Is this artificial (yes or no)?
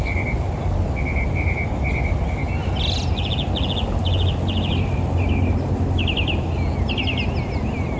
no